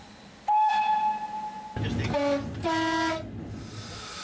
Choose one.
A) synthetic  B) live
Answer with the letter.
B